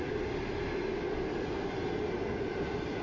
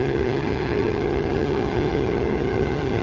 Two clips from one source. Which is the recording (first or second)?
first